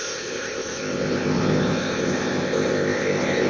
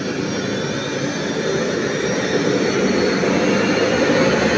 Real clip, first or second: second